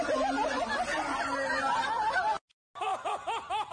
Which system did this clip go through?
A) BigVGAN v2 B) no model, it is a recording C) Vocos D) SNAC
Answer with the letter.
B